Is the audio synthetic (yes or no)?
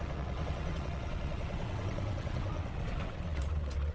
yes